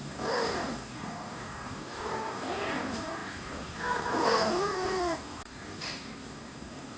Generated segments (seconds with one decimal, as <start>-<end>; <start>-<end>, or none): 0.0-7.0